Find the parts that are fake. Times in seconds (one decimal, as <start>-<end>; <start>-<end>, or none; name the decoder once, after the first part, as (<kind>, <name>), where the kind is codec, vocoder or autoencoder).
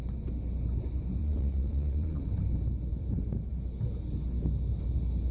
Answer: 1.2-2.2 (vocoder, Vocos)